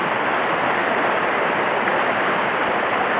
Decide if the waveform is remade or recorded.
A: recorded